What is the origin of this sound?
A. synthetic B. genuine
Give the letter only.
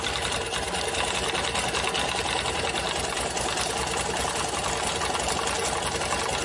B